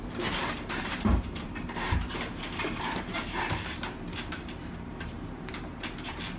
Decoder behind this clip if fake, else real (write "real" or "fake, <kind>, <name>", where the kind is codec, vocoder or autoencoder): fake, vocoder, BigVGAN v2